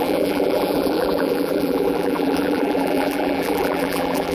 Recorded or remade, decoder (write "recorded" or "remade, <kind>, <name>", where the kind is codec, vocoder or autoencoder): remade, vocoder, BigVGAN v2